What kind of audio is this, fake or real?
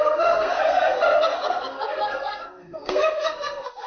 fake